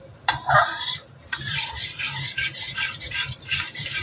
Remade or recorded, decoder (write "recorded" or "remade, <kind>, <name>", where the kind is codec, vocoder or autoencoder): remade, vocoder, BigVGAN v2